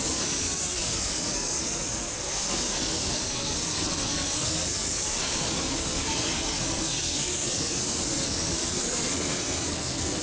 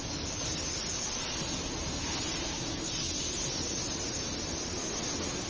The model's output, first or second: first